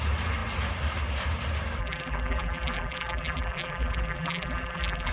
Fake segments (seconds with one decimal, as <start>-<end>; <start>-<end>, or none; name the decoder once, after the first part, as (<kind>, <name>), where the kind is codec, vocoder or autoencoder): 1.8-5.1 (vocoder, BigVGAN v2)